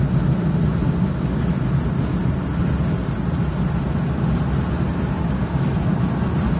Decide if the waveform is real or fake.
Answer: real